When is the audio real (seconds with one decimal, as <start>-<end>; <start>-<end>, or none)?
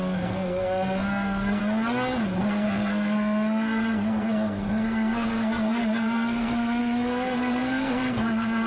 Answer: 1.6-2.4